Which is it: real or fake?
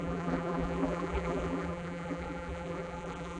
fake